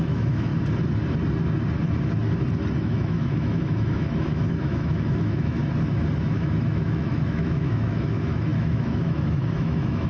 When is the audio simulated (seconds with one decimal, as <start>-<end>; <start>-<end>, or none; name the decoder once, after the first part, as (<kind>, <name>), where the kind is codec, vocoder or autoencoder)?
0.0-0.5 (autoencoder, DAC-VAE); 2.8-5.6; 6.2-10.1